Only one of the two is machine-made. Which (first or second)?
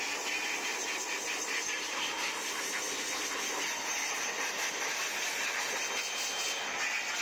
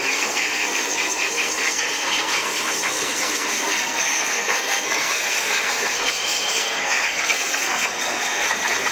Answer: second